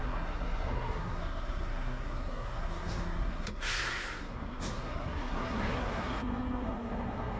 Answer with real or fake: fake